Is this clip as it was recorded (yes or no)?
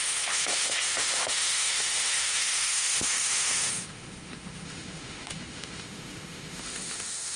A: no